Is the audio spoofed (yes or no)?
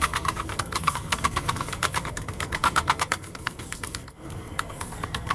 yes